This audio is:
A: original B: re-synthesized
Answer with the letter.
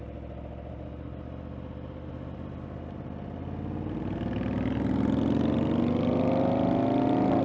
A